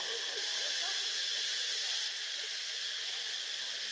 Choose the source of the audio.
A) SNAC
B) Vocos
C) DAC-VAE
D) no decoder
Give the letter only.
D